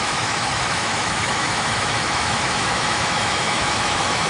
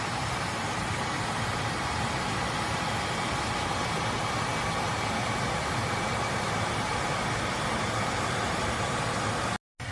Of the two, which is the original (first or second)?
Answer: second